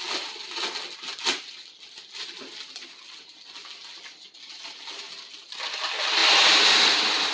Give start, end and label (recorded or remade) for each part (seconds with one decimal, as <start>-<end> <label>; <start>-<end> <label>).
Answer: 0.0-7.3 recorded